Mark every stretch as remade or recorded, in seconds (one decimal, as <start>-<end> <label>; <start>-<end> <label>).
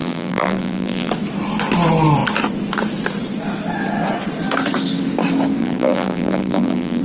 0.0-1.1 remade; 1.1-5.6 recorded; 5.6-7.0 remade